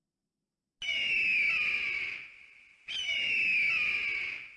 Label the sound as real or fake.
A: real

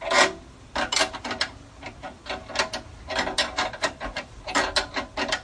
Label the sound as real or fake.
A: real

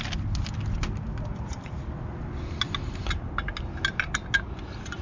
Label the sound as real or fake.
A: real